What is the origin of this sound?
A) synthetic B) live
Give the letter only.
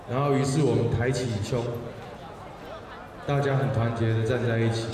B